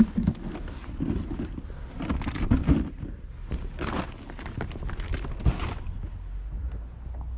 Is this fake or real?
real